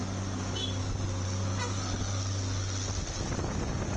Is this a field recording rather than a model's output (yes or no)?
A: yes